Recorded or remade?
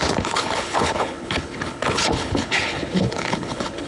remade